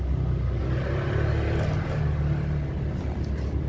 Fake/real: real